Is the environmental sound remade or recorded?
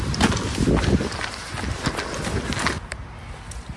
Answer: recorded